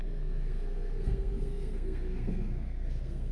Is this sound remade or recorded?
remade